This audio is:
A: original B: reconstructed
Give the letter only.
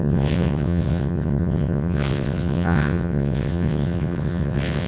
B